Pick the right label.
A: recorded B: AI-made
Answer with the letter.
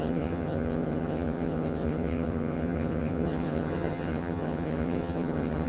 B